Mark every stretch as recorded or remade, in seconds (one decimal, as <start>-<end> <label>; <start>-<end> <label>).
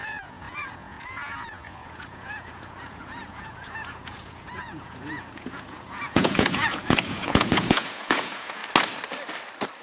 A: 0.0-8.6 remade; 8.6-9.8 recorded